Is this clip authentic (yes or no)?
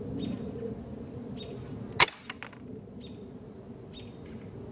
yes